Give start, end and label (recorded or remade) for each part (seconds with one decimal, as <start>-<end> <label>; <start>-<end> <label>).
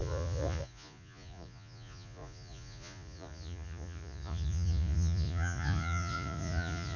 0.0-7.0 remade